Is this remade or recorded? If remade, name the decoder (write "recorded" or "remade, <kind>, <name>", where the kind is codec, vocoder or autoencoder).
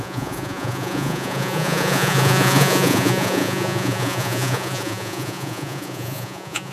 remade, vocoder, Vocos